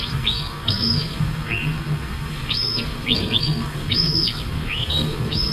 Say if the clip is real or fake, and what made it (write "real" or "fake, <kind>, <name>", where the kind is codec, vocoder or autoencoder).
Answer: fake, codec, SNAC